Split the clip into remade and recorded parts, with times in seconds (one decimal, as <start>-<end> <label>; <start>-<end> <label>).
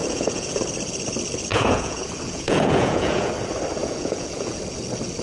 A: 0.0-0.6 remade; 0.6-1.5 recorded; 1.5-3.3 remade; 3.3-3.8 recorded; 3.8-4.6 remade; 4.6-5.2 recorded